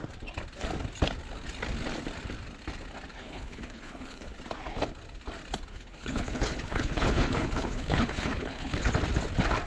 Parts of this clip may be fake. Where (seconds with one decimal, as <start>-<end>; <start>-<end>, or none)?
3.1-4.4; 5.7-8.9